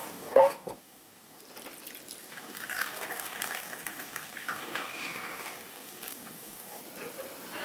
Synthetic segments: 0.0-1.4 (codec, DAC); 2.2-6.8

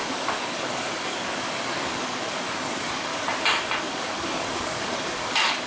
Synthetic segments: 0.0-3.1 (codec, DAC); 3.8-5.7

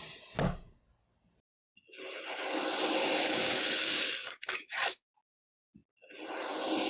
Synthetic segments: 3.2-5.1 (codec, DAC)